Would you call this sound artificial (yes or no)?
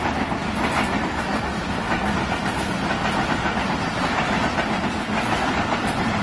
no